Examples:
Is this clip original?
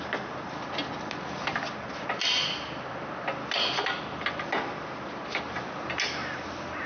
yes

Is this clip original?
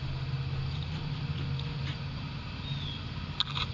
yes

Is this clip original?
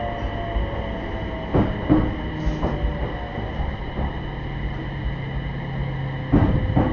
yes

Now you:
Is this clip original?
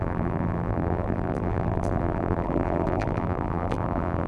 no